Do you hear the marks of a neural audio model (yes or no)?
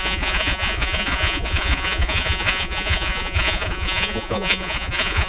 yes